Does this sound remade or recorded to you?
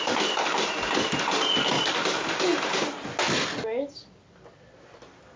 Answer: recorded